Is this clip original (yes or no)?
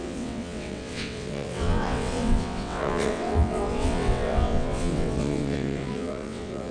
no